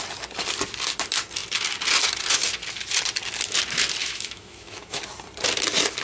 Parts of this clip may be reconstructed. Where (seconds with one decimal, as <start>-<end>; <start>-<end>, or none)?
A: 4.0-5.0